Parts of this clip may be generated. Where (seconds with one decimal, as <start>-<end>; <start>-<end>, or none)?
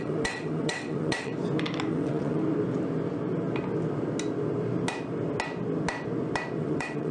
0.0-1.3; 1.9-2.4; 6.6-7.1